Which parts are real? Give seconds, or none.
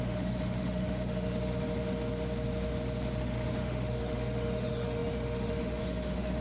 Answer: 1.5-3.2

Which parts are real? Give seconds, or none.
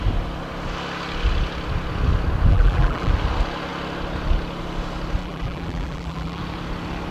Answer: 0.0-2.5; 3.1-5.2; 6.4-7.1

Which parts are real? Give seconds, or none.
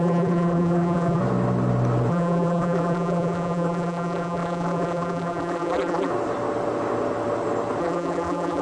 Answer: 1.2-2.1; 6.1-7.8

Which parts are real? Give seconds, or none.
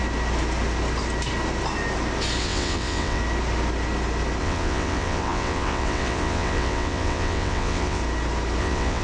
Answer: 0.0-2.4; 3.2-4.4; 8.0-8.6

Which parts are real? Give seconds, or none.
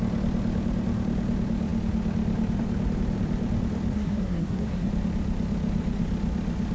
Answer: 0.0-3.9; 4.9-6.7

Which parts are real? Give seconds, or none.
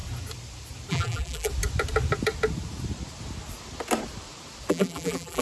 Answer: 0.0-0.9; 1.5-4.7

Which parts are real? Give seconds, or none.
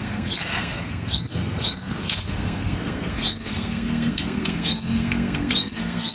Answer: none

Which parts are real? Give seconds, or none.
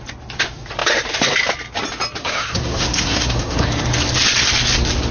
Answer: 0.0-2.2; 3.7-5.1